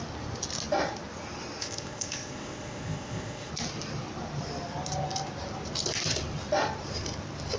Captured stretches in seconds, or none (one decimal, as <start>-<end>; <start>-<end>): 0.0-1.6; 3.5-7.6